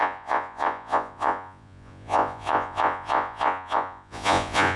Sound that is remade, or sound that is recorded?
remade